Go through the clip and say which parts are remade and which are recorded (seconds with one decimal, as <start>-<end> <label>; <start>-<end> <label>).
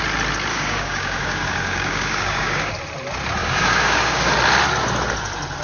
0.0-0.5 recorded; 0.5-2.7 remade; 2.7-3.4 recorded; 3.4-4.3 remade; 4.3-5.6 recorded